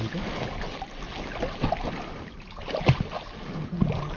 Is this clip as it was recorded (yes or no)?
yes